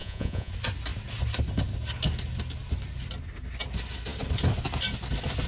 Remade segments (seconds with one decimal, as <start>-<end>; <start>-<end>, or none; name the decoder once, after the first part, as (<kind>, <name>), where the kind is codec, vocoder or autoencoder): 0.0-0.5 (vocoder, Vocos)